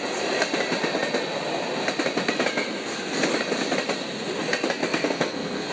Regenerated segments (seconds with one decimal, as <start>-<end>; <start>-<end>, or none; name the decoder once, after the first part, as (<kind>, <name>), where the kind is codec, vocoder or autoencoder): 4.8-5.7 (codec, SNAC)